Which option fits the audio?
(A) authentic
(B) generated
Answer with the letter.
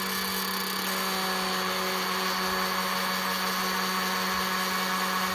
A